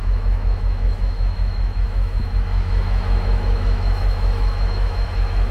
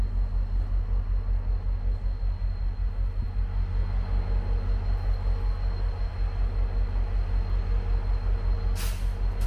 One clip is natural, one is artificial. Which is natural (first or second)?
second